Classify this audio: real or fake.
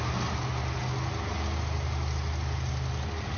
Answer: real